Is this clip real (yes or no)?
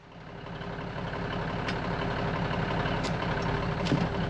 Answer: yes